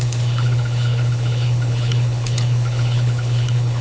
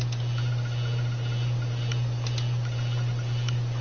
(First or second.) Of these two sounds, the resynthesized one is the first